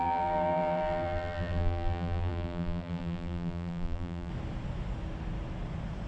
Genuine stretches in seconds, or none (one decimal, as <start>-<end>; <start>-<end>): 4.3-6.1